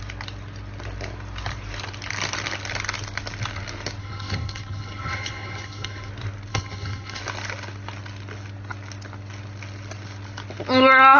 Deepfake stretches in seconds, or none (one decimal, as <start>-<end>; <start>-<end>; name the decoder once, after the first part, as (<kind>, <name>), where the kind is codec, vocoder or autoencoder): 4.0-6.1 (codec, HILCodec); 6.5-7.2